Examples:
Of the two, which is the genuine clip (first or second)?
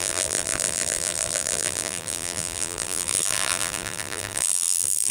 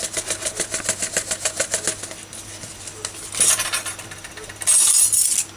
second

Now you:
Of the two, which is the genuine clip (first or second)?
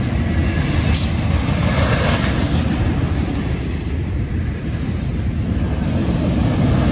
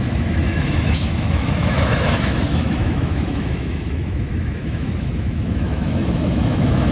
first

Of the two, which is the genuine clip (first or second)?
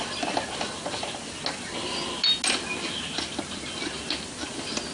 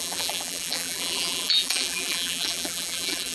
first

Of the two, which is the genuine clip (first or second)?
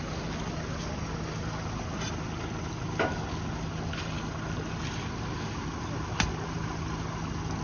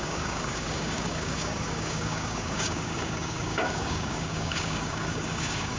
first